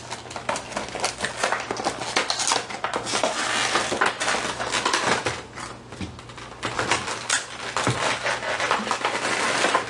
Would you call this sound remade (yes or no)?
no